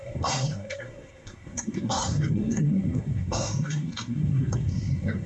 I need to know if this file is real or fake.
fake